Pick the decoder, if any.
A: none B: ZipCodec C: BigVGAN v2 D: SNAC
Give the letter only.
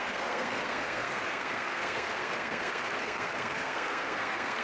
D